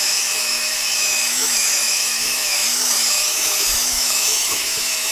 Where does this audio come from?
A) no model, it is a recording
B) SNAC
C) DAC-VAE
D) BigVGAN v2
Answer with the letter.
C